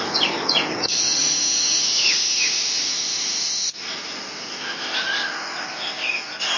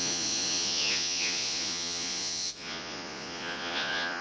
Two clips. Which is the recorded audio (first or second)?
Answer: first